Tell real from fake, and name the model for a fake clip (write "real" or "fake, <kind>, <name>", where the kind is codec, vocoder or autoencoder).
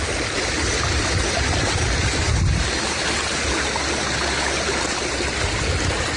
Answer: real